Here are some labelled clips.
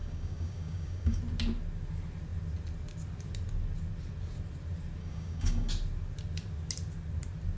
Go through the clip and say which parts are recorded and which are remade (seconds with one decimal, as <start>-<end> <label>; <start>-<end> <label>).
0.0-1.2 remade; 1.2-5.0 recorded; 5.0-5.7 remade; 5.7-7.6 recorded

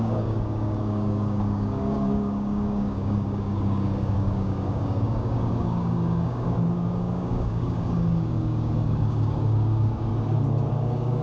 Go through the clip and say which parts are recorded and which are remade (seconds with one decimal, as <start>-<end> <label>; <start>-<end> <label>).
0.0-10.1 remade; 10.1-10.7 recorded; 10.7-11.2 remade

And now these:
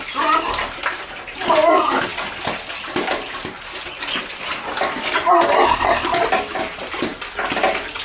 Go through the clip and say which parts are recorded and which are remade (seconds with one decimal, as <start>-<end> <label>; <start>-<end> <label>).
0.0-8.0 recorded

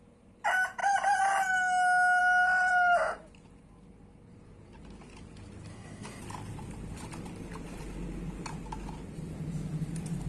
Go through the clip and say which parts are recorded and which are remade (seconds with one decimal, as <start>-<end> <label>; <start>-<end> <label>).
0.0-5.7 recorded; 5.7-6.2 remade; 6.2-10.3 recorded

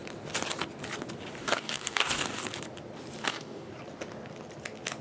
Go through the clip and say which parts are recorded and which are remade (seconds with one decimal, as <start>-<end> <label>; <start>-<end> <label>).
0.0-1.4 recorded; 1.4-2.4 remade; 2.4-3.2 recorded; 3.2-3.7 remade; 3.7-5.0 recorded

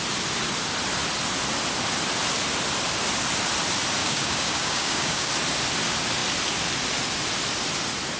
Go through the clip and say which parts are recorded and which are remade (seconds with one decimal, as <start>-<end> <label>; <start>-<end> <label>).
0.0-4.0 recorded; 4.0-5.3 remade; 5.3-8.2 recorded

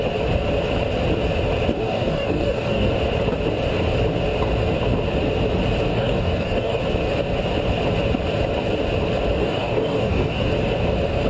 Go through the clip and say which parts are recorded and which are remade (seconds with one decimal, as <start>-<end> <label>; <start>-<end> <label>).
0.0-1.7 recorded; 1.7-2.9 remade; 2.9-5.9 recorded; 5.9-6.8 remade; 6.8-9.4 recorded; 9.4-10.5 remade; 10.5-11.3 recorded

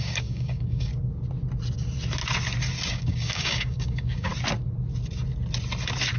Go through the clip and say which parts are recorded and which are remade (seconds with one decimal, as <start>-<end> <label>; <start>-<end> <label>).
0.0-0.9 remade; 0.9-2.9 recorded; 2.9-4.3 remade; 4.3-6.2 recorded